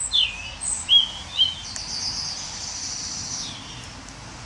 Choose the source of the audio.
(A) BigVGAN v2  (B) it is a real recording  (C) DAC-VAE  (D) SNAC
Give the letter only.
B